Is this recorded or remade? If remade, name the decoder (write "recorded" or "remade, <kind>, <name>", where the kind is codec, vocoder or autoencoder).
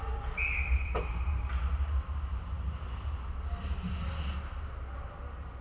recorded